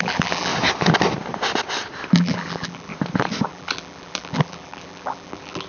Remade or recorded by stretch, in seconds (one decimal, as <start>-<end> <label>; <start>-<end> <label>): 0.0-0.5 remade; 0.5-2.1 recorded; 2.1-2.9 remade; 2.9-3.5 recorded; 3.5-5.7 remade